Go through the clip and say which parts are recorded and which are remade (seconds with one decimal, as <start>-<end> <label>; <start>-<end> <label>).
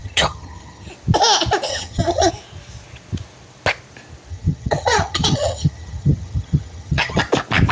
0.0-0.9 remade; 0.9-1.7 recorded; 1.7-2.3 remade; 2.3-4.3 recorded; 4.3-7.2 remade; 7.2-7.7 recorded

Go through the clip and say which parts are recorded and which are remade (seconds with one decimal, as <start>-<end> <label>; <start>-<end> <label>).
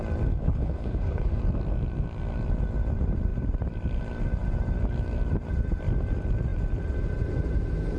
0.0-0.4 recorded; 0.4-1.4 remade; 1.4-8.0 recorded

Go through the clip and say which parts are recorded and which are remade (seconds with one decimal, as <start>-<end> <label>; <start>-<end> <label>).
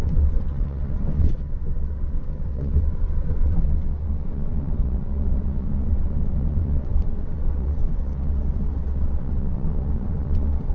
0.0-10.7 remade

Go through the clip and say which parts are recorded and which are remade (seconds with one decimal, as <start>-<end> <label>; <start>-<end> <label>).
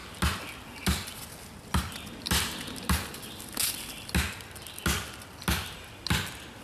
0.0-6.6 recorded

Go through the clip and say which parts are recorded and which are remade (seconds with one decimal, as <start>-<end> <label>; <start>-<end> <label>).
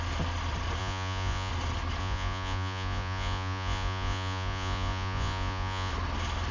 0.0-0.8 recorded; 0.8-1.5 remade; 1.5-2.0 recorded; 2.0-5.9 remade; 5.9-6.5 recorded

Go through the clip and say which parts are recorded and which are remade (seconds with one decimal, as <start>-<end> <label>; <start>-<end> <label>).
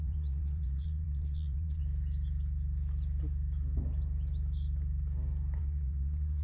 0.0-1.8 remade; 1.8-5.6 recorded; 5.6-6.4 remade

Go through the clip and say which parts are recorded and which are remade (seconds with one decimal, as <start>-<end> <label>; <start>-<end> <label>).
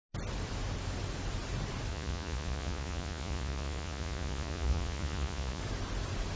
0.0-1.9 recorded; 1.9-5.6 remade; 5.6-6.4 recorded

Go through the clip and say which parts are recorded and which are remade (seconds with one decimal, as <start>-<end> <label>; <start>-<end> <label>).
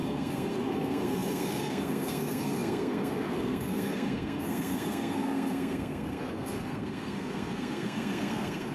0.0-8.7 remade